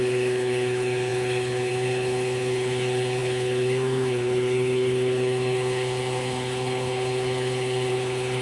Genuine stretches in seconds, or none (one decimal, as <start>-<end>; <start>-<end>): none